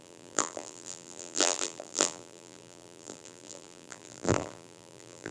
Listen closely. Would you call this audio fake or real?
fake